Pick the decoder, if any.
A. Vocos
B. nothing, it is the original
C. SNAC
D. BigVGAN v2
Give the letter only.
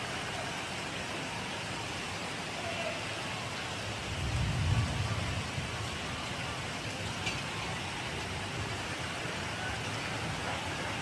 B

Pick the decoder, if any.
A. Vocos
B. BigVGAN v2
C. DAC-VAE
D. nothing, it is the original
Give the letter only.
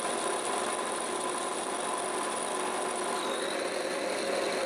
D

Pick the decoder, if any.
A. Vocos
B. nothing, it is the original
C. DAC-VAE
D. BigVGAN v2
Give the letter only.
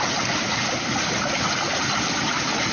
B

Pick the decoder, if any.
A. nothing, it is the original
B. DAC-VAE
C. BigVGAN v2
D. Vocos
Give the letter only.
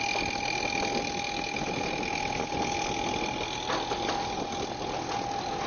A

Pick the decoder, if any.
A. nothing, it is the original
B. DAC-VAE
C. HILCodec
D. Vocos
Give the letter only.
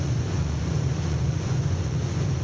D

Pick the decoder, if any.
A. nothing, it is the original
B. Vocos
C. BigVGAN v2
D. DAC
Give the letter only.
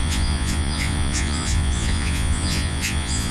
B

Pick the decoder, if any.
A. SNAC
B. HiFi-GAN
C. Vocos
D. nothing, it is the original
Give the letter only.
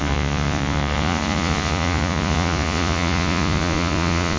C